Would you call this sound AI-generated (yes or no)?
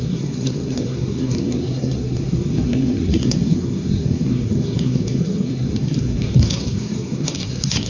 yes